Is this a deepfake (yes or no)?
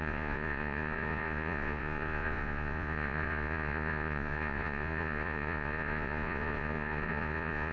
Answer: yes